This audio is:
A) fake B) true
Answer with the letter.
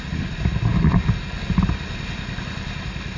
B